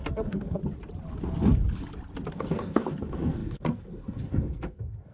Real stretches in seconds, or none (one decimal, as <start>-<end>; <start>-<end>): 0.6-2.3